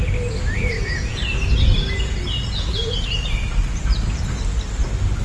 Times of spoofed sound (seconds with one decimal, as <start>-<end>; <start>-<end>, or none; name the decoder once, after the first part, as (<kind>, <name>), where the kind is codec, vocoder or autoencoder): none